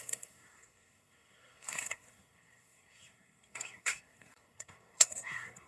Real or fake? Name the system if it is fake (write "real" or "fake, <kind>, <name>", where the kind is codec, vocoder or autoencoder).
fake, codec, SNAC